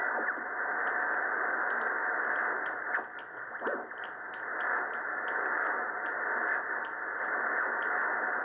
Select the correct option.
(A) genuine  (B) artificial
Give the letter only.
A